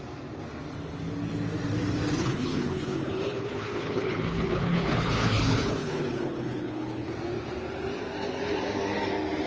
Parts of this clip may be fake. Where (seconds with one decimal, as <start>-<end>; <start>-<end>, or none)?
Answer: 2.2-7.1

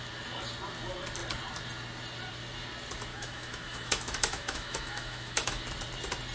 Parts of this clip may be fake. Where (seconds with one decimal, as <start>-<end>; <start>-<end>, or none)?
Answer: 3.1-5.6

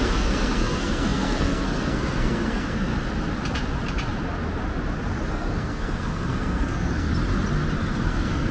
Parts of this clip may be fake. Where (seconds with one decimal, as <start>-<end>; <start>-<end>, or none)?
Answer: 0.0-2.9; 5.3-7.1; 7.8-8.5

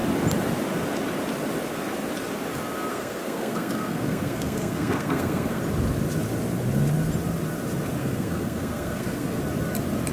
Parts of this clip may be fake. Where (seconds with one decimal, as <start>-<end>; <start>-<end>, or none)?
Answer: 2.9-5.6; 8.0-9.4

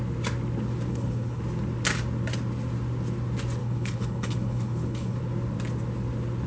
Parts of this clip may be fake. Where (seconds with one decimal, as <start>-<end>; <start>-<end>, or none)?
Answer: 0.9-1.4; 3.6-5.2

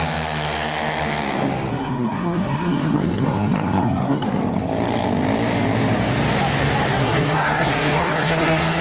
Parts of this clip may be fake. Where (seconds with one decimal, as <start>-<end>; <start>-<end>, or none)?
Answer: 1.7-4.4; 6.9-8.8